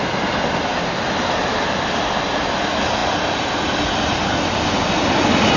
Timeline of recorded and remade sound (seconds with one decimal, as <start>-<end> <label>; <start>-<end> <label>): 0.0-5.6 recorded